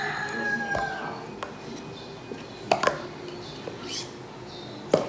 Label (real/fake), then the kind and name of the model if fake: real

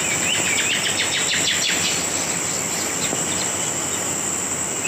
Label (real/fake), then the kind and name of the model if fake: real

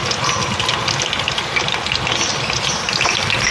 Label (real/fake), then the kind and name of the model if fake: real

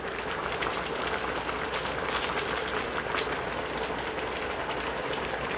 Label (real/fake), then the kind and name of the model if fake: real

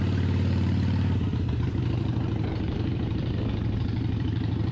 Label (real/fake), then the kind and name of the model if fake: fake, vocoder, BigVGAN v2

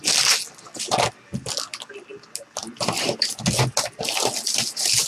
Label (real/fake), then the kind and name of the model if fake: real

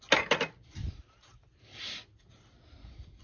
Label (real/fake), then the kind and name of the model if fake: real